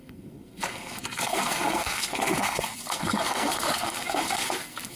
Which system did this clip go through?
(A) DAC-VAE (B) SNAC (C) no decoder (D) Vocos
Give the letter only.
B